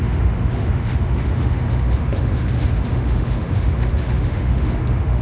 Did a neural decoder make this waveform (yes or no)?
yes